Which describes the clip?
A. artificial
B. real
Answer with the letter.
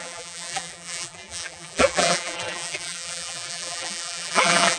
A